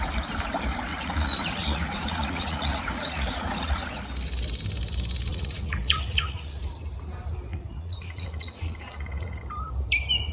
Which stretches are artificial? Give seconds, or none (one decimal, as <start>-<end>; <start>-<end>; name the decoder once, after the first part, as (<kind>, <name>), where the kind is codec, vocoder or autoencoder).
0.9-3.9 (vocoder, Vocos); 5.3-6.6; 7.5-9.4